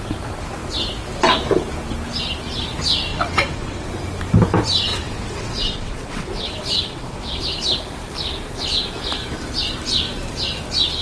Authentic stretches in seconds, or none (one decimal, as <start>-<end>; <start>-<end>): 0.0-3.1; 3.9-4.9; 7.4-11.0